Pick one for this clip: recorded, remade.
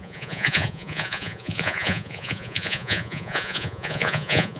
remade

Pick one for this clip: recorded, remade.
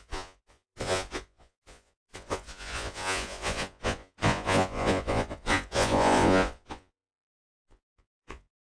remade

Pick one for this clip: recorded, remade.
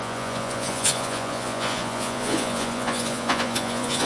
remade